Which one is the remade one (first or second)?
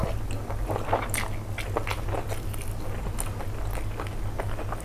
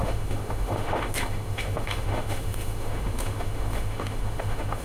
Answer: second